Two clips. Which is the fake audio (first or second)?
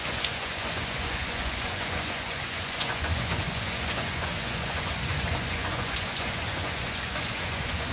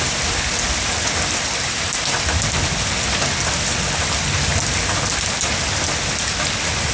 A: first